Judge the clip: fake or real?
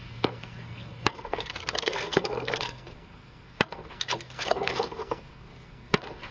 fake